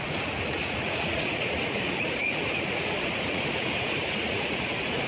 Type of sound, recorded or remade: remade